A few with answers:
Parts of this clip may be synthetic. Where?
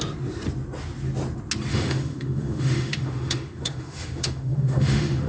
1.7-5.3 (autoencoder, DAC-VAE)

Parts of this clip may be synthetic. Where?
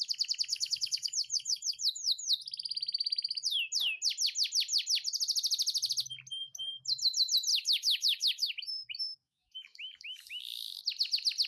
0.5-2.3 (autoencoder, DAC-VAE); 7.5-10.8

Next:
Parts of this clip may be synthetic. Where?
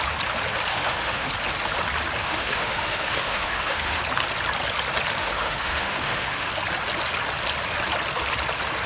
0.7-1.3 (autoencoder, DAC-VAE); 2.2-4.0; 5.2-6.5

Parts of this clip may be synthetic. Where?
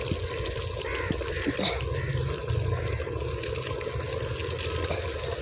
none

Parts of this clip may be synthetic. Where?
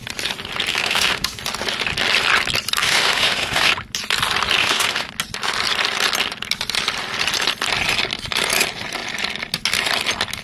0.7-1.4 (autoencoder, DAC-VAE); 2.8-3.7; 4.6-5.1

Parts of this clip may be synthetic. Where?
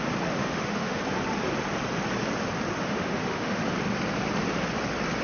0.4-1.0 (autoencoder, DAC-VAE); 2.8-3.6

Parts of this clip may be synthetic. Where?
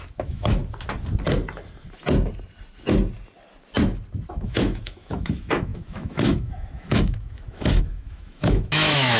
0.0-0.6 (autoencoder, DAC-VAE); 4.3-9.2